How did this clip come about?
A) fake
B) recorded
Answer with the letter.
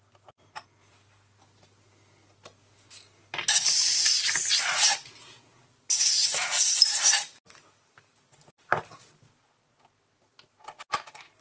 B